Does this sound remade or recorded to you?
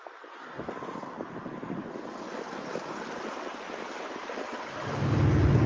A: recorded